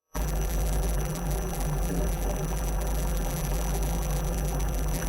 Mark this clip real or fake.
fake